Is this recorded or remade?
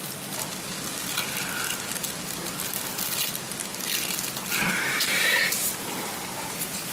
recorded